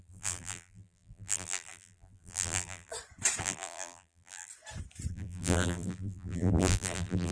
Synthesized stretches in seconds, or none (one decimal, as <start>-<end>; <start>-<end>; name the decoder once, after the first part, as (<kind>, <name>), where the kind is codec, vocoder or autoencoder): 0.0-2.9 (vocoder, BigVGAN v2); 3.4-4.5; 5.1-7.3